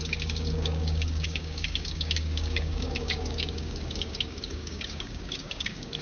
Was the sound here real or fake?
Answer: fake